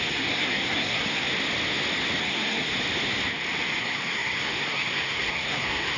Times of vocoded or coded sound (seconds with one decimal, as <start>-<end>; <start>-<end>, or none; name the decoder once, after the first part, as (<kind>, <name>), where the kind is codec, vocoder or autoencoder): 0.0-1.3 (codec, SNAC); 2.2-2.7; 3.8-6.0